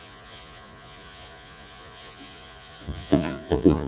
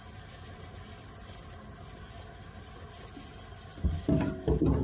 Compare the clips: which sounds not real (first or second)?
first